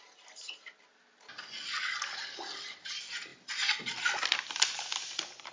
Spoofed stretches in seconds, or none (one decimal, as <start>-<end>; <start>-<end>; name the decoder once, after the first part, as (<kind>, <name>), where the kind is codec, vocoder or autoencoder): 3.3-5.5 (vocoder, BigVGAN v2)